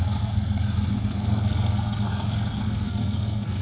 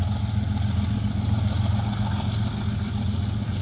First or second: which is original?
second